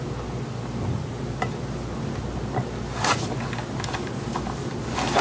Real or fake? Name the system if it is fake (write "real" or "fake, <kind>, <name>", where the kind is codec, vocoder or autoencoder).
real